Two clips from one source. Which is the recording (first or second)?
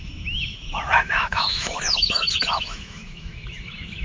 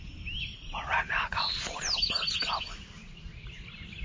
second